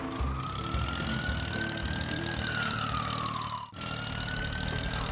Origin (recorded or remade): recorded